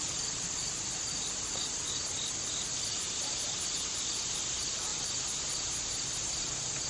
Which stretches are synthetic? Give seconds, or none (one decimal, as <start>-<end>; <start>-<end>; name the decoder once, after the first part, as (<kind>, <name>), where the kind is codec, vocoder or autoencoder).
none